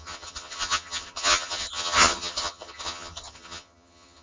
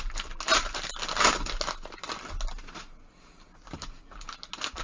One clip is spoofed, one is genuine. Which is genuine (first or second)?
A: second